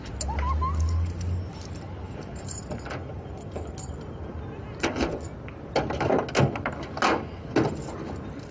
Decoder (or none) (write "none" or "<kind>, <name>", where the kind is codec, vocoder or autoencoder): none